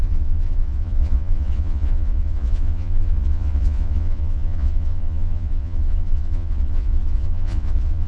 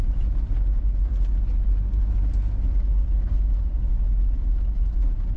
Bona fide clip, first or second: second